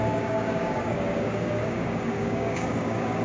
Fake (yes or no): yes